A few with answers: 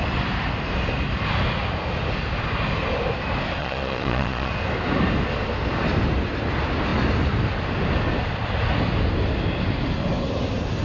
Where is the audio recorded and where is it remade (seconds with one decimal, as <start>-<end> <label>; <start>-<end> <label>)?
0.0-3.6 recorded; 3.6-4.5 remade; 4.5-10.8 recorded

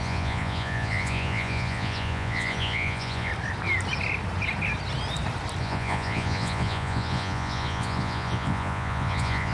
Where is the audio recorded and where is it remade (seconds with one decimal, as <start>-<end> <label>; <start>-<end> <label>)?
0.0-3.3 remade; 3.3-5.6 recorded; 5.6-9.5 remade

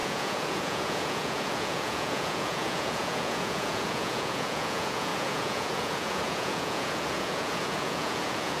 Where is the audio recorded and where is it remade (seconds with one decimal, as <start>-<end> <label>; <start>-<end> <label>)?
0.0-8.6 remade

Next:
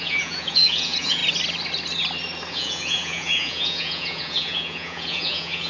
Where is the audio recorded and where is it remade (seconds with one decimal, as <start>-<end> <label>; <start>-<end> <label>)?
0.0-1.2 remade; 1.2-2.5 recorded; 2.5-5.7 remade